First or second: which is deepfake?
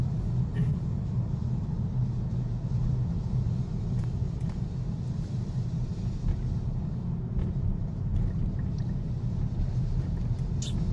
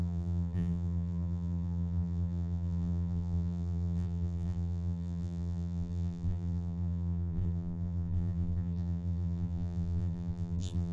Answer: second